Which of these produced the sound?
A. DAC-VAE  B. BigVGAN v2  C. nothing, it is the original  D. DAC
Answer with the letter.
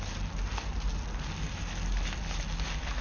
C